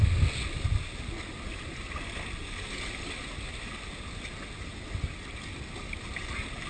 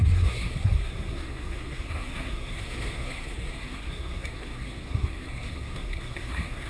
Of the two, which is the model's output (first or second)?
second